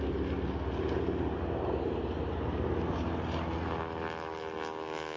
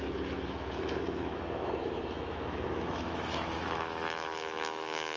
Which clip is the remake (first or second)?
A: second